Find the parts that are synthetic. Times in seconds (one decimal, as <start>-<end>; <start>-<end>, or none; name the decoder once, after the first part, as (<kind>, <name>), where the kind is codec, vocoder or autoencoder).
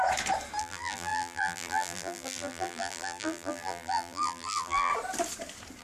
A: 0.6-4.9 (vocoder, BigVGAN v2)